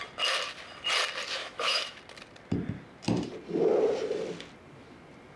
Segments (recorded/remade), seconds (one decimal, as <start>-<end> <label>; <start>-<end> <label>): 0.0-1.4 recorded; 1.4-2.0 remade; 2.0-5.4 recorded